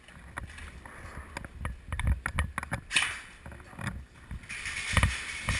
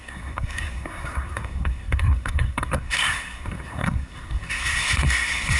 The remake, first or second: second